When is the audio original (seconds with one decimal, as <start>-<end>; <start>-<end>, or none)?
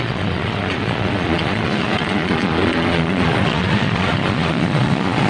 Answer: none